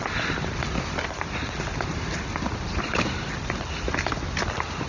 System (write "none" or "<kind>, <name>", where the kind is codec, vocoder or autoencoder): none